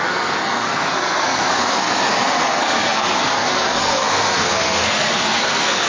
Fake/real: fake